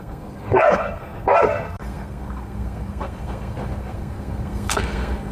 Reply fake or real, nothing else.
fake